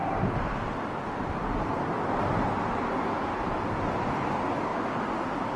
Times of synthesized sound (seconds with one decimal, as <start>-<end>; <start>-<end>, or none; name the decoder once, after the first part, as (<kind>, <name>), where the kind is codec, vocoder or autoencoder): 0.0-0.6 (vocoder, BigVGAN v2)